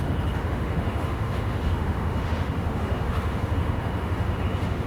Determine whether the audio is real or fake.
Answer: fake